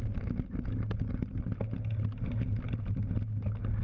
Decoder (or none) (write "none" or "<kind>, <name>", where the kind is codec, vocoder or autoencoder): none